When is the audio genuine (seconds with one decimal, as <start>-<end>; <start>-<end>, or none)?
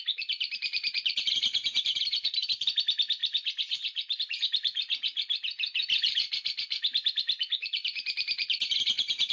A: none